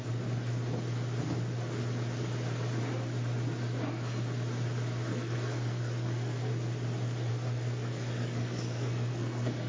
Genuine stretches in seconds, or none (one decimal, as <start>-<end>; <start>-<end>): 0.0-5.1; 6.5-7.3